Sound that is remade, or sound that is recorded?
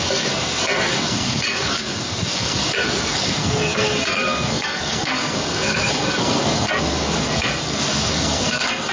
remade